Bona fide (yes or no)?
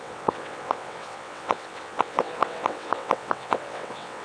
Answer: no